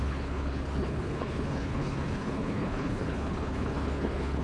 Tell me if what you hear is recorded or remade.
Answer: remade